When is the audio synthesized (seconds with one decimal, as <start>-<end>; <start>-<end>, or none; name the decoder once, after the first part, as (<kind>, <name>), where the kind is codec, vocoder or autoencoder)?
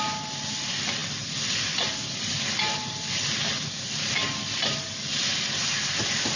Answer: none